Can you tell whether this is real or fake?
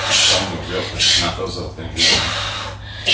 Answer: real